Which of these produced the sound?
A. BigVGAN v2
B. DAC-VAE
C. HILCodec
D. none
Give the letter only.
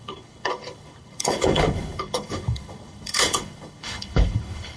C